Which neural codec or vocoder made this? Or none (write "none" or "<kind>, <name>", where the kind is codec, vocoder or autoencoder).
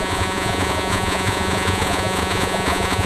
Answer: vocoder, Vocos